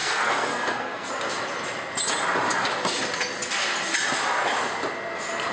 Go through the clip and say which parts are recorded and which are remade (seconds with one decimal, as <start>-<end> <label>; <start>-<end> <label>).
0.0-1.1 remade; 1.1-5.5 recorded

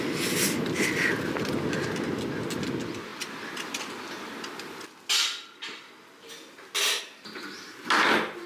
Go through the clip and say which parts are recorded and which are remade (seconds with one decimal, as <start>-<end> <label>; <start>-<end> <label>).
0.0-8.5 recorded

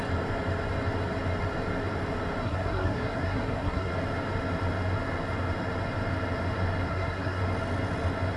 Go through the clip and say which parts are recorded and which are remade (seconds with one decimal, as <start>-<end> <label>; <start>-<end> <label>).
0.0-2.4 recorded; 2.4-3.9 remade; 3.9-6.9 recorded; 6.9-7.4 remade; 7.4-8.4 recorded

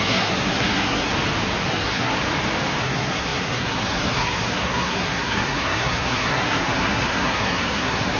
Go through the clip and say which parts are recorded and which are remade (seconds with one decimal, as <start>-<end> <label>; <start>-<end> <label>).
0.0-1.1 remade; 1.1-1.7 recorded; 1.7-2.1 remade; 2.1-2.8 recorded; 2.8-8.2 remade

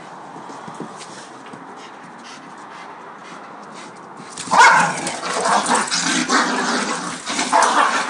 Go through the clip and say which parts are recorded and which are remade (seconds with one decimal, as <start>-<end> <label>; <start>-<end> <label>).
0.0-8.1 recorded